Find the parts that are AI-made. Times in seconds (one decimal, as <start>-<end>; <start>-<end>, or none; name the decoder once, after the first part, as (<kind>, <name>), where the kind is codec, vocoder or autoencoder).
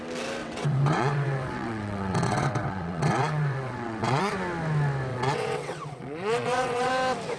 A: 0.4-4.2 (vocoder, WaveNeXt); 5.1-6.9